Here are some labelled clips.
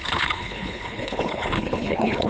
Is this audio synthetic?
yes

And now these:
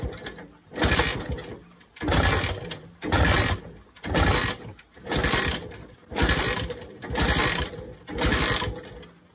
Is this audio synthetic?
no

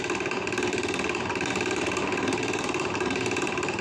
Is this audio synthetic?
yes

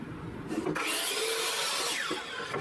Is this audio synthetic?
no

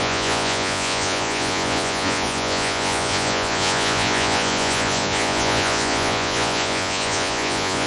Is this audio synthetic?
yes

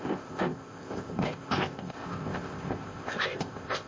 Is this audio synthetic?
yes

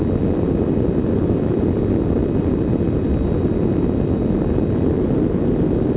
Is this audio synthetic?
no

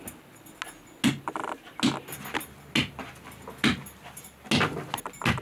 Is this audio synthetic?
no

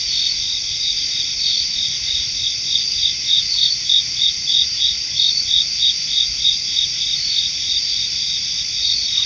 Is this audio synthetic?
no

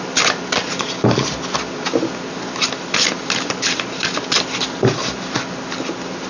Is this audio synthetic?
no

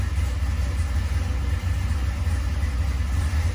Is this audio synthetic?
no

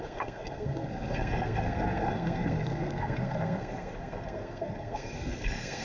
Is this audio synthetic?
yes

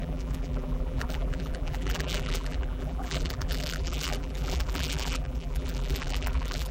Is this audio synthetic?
yes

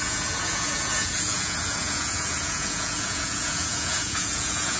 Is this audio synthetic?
yes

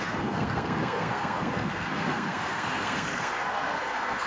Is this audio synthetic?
yes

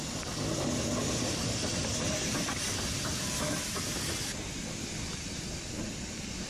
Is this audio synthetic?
no